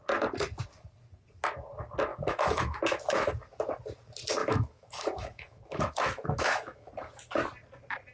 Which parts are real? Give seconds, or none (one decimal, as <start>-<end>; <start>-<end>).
0.0-2.1; 3.3-4.4; 6.9-8.1